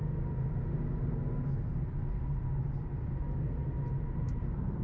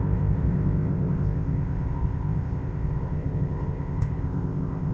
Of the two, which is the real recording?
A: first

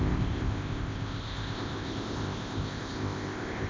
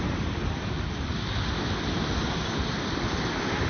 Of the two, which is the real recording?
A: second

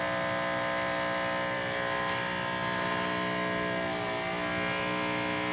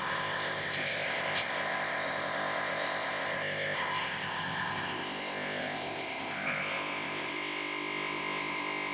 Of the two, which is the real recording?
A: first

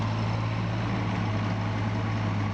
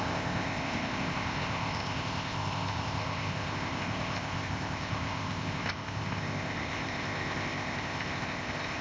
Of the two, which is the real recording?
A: first